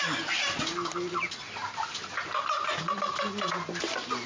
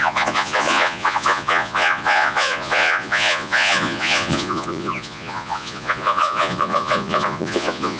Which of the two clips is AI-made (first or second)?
second